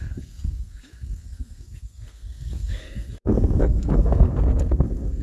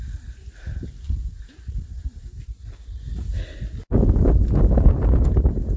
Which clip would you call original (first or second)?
second